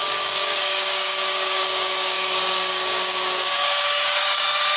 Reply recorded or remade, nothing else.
remade